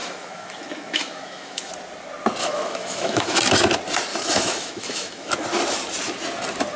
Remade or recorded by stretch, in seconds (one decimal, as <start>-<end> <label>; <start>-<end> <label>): 0.0-1.7 remade; 1.7-2.4 recorded; 2.4-3.4 remade; 3.4-4.1 recorded; 4.1-5.3 remade; 5.3-6.8 recorded